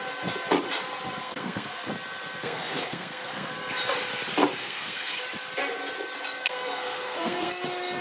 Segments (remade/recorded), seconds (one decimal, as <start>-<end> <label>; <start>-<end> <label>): 0.0-1.2 recorded; 1.2-1.9 remade; 1.9-2.4 recorded; 2.4-3.5 remade; 3.5-4.6 recorded; 4.6-5.2 remade; 5.2-6.4 recorded; 6.4-7.5 remade; 7.5-8.0 recorded